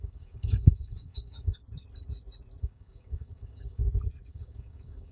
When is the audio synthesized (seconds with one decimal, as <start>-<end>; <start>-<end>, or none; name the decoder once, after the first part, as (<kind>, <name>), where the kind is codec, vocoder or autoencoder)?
0.0-1.6 (codec, DAC); 2.6-3.8; 4.3-5.1